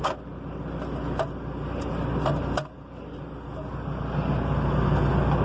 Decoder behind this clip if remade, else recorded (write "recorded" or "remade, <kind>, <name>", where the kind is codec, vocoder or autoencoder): recorded